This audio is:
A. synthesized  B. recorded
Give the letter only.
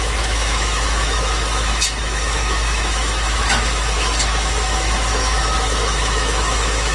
A